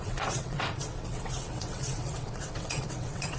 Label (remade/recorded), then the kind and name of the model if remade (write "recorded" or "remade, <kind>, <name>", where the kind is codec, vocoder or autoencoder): remade, vocoder, WaveNeXt